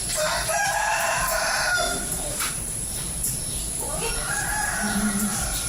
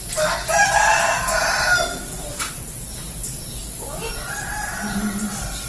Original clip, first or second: second